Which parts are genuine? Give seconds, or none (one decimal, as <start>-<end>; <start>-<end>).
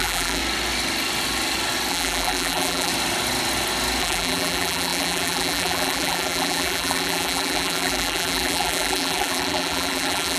0.4-1.9; 2.9-4.0